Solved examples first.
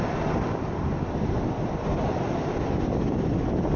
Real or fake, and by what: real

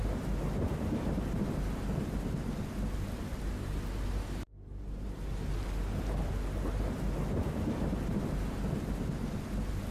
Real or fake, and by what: real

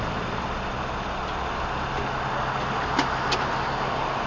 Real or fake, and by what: real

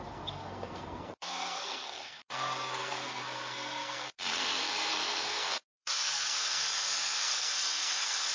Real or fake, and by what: fake, codec, SNAC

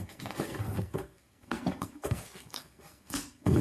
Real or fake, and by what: fake, codec, SNAC